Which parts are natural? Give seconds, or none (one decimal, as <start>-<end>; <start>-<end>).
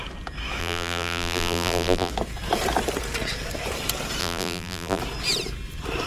0.0-0.6; 2.1-4.2; 5.0-6.1